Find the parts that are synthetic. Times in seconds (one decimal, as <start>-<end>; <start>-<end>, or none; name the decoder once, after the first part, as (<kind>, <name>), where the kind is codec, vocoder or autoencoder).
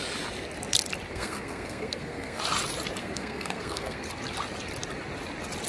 1.1-2.4 (codec, SNAC); 3.0-4.1